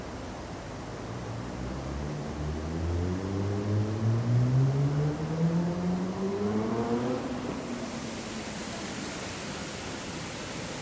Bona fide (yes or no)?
yes